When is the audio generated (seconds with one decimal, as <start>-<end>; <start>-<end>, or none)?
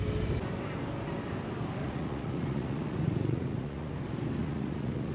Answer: 1.8-3.9; 4.4-5.1